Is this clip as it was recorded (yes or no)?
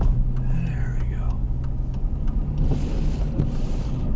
yes